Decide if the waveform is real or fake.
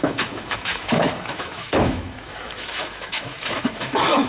fake